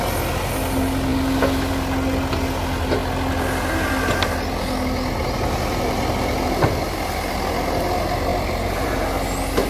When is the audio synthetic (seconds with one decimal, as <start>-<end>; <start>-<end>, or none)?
8.3-9.0